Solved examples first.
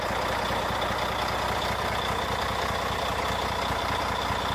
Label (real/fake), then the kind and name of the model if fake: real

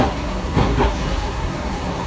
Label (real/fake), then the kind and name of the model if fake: fake, codec, SNAC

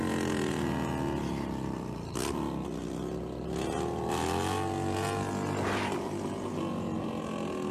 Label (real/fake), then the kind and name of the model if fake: real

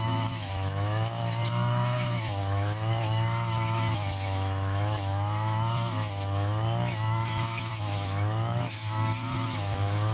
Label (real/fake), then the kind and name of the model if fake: fake, autoencoder, DAC-VAE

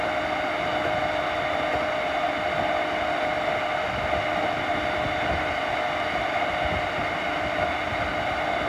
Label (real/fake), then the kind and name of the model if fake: real